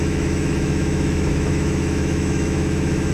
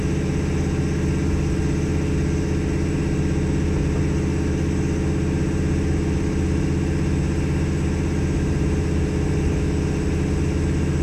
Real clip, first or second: second